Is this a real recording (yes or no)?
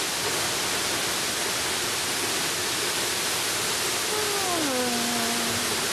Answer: yes